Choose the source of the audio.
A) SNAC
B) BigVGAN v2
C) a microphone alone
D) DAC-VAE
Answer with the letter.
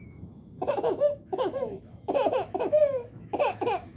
D